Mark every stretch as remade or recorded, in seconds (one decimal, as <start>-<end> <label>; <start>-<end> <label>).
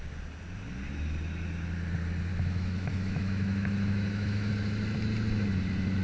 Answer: 0.0-2.3 recorded; 2.3-4.5 remade; 4.5-6.0 recorded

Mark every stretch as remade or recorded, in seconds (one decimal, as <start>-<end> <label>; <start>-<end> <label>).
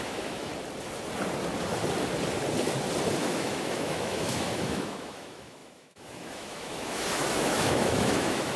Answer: 0.0-0.5 remade; 0.5-3.2 recorded; 3.2-8.6 remade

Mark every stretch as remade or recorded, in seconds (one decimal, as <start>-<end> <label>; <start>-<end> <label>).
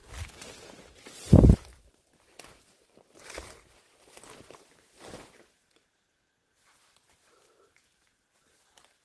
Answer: 0.0-9.0 recorded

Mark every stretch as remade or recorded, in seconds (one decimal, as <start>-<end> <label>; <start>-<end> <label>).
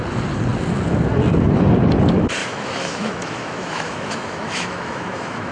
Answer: 0.0-2.4 recorded; 2.4-5.5 remade